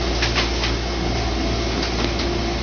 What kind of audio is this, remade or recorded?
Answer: recorded